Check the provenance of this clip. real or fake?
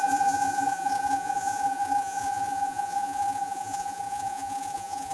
fake